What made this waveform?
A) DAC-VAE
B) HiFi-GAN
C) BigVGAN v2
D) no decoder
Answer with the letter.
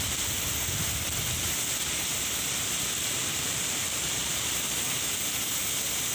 D